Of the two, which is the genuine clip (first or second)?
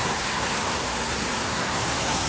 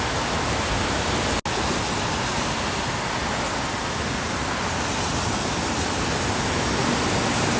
second